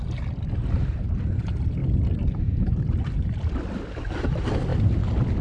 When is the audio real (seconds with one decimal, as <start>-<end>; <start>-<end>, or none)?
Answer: 0.0-1.8; 4.1-5.4